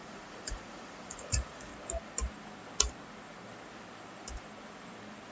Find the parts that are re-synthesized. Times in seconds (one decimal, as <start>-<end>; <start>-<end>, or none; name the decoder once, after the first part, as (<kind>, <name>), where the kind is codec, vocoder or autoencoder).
0.0-1.7 (vocoder, Vocos)